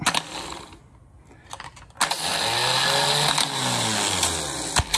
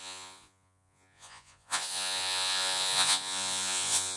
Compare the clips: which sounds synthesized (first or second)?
second